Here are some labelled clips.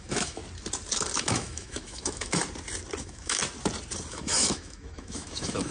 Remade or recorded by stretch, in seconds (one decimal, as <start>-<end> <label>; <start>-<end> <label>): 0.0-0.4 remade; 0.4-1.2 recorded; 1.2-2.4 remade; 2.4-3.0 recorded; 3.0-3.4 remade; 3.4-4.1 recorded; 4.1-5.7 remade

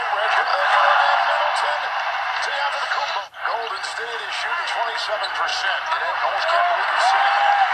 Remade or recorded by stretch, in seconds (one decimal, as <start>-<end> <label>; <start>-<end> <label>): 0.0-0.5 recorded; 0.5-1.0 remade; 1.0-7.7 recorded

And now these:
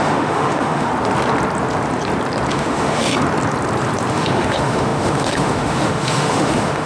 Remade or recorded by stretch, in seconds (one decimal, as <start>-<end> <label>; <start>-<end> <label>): 0.0-0.9 remade; 0.9-2.5 recorded; 2.5-3.1 remade; 3.1-4.1 recorded; 4.1-6.9 remade

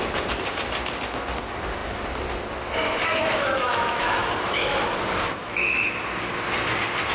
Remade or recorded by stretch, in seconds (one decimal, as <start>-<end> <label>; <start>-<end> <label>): 0.0-3.1 recorded; 3.1-4.3 remade; 4.3-5.4 recorded; 5.4-6.0 remade; 6.0-7.1 recorded

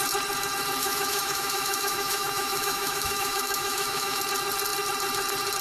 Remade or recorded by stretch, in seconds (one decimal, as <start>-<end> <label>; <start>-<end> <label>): 0.0-0.8 recorded; 0.8-4.2 remade; 4.2-5.6 recorded

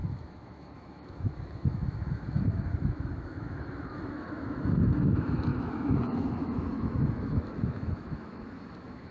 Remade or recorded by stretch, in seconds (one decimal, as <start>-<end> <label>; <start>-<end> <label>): 0.0-9.1 remade

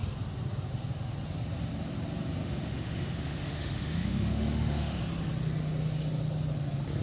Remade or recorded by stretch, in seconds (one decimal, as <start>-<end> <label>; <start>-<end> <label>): 0.0-2.4 recorded; 2.4-5.0 remade; 5.0-7.0 recorded